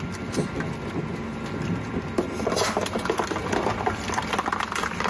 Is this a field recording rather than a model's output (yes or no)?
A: yes